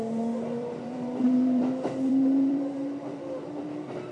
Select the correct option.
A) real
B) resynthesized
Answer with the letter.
B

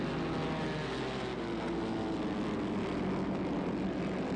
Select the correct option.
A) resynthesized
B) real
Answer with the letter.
B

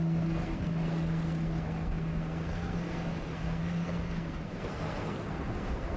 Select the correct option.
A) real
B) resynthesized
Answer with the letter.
B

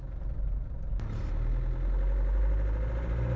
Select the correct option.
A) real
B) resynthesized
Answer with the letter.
A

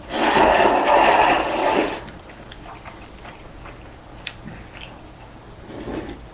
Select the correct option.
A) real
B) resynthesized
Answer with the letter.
A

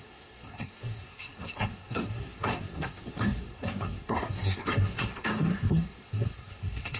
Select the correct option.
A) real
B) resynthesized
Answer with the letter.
B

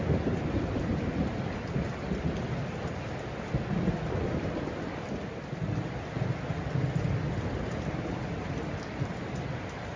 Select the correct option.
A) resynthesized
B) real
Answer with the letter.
B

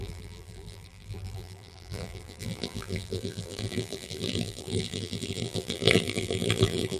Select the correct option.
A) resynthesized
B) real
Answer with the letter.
A